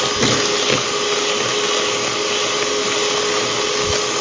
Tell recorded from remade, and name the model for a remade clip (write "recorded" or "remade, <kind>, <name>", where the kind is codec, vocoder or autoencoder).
recorded